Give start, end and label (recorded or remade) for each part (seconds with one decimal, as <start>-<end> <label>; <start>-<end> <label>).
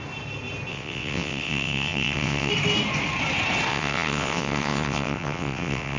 0.0-0.7 recorded; 0.7-2.5 remade; 2.5-3.7 recorded; 3.7-6.0 remade